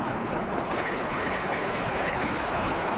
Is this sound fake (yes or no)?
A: yes